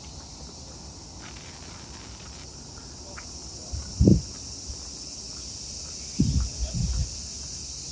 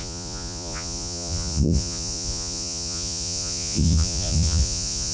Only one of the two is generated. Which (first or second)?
second